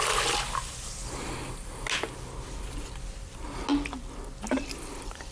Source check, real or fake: real